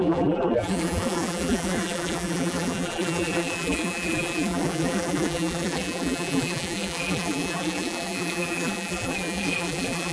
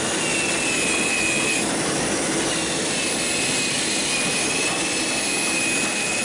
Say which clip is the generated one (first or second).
first